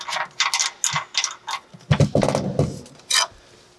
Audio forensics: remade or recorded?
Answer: recorded